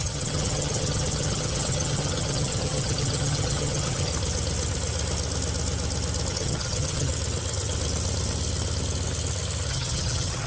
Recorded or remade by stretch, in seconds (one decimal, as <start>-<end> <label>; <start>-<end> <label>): 0.0-4.1 remade; 4.1-6.3 recorded; 6.3-7.1 remade; 7.1-9.7 recorded; 9.7-10.5 remade